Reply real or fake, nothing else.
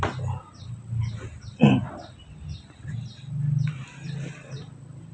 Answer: real